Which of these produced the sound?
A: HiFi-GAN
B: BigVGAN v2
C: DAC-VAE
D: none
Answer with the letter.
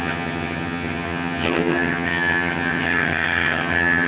A